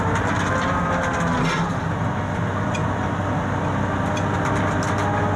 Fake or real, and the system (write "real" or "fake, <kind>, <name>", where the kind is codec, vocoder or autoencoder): real